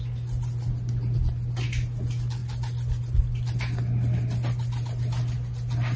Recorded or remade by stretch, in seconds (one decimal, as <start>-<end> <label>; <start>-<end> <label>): 0.0-6.0 recorded

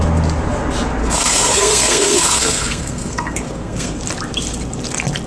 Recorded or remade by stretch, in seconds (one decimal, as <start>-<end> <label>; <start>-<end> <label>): 0.0-1.0 recorded; 1.0-4.0 remade; 4.0-5.3 recorded

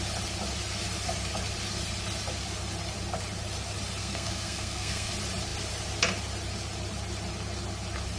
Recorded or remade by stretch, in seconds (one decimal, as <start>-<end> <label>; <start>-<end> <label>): 0.0-4.0 recorded; 4.0-5.1 remade; 5.1-8.2 recorded

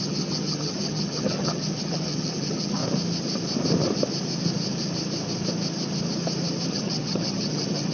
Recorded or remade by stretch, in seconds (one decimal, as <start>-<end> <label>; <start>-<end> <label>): 0.0-2.8 remade; 2.8-6.7 recorded; 6.7-7.9 remade

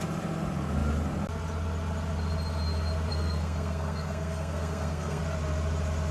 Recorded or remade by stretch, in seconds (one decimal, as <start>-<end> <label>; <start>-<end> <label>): 0.0-3.1 recorded; 3.1-5.2 remade; 5.2-6.1 recorded

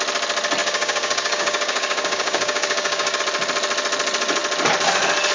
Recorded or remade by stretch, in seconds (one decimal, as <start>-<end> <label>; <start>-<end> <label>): 0.0-0.6 recorded; 0.6-3.2 remade; 3.2-5.3 recorded

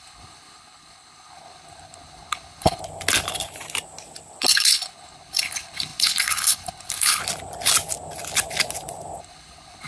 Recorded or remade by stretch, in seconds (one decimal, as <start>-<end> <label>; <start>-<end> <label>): 0.0-2.8 remade; 2.8-4.4 recorded; 4.4-7.2 remade; 7.2-9.2 recorded; 9.2-9.9 remade

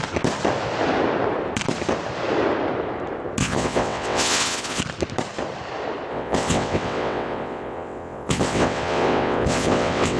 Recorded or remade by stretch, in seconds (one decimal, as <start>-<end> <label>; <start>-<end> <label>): 0.0-3.4 recorded; 3.4-4.8 remade; 4.8-6.1 recorded; 6.1-10.2 remade